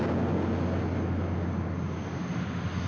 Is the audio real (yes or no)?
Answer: yes